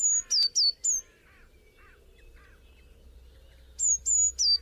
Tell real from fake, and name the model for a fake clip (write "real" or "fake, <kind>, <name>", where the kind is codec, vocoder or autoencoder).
real